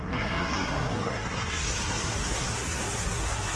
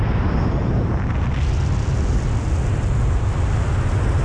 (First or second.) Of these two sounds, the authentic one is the second